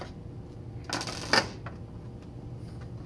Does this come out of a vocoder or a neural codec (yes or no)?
no